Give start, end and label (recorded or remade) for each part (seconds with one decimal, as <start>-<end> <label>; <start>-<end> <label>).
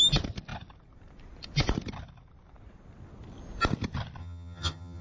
0.0-4.2 recorded; 4.2-5.0 remade